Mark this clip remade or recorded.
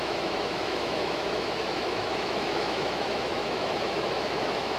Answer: remade